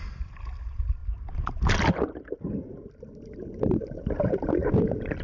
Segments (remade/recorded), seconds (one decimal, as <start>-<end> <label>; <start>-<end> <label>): 0.0-1.0 remade; 1.0-4.1 recorded; 4.1-5.2 remade